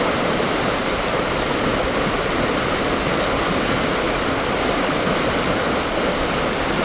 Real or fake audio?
real